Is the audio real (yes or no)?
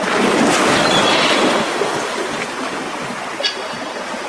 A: yes